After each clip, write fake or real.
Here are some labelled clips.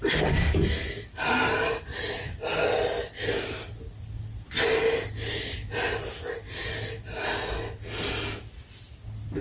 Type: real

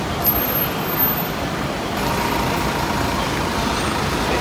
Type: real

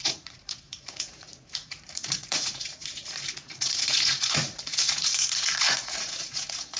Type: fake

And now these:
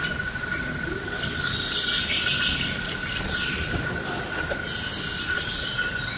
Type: real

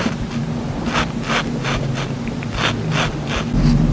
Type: real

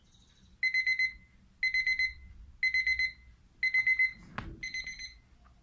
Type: real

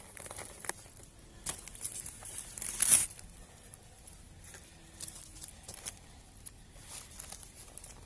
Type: real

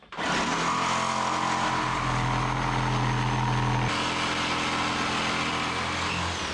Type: real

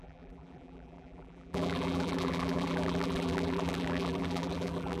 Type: fake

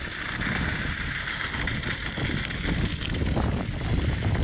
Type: real